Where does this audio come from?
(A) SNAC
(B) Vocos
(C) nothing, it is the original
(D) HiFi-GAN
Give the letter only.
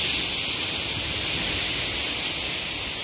C